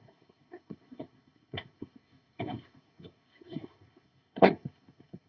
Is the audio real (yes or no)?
no